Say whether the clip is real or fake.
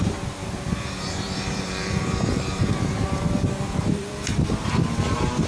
fake